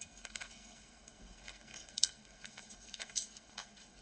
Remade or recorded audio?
remade